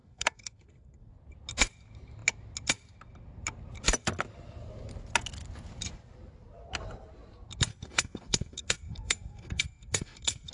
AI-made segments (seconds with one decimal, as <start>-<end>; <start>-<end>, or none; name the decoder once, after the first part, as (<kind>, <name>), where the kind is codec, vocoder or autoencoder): 0.0-1.1 (codec, SNAC); 7.7-10.5